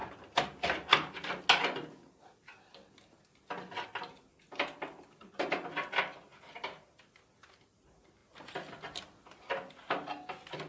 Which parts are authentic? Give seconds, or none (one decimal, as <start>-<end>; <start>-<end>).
0.0-10.7